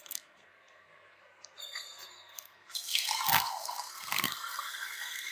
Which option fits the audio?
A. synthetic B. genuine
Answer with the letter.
A